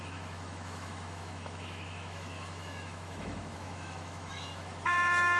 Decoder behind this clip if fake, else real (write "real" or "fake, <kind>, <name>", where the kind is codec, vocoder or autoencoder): fake, autoencoder, DAC-VAE